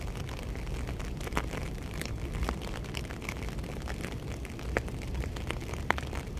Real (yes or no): yes